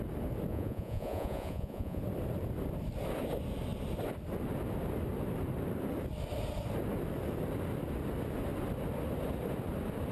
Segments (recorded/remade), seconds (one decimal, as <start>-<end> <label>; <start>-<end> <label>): 0.0-0.5 recorded; 0.5-2.0 remade; 2.0-10.1 recorded